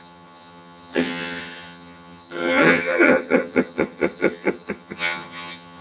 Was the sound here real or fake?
fake